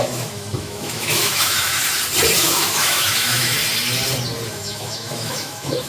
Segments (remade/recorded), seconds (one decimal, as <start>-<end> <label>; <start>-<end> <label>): 0.0-1.8 remade; 1.8-2.4 recorded; 2.4-3.6 remade; 3.6-4.5 recorded; 4.5-5.9 remade